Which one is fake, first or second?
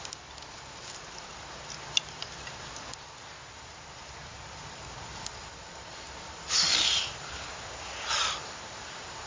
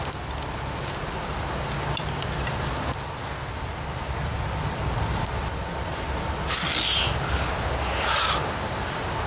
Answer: first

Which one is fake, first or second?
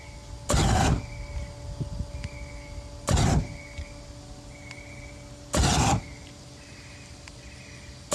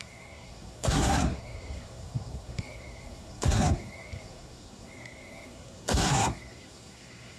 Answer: second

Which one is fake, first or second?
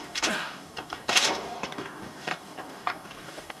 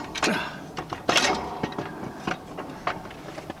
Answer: first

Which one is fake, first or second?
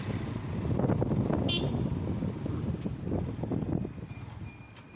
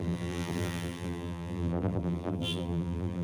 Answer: second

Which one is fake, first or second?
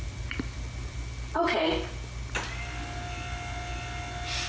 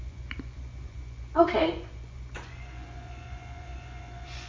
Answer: second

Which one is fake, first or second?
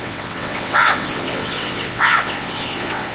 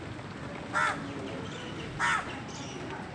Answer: first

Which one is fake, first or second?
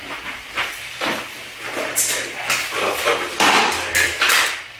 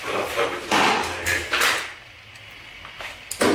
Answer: first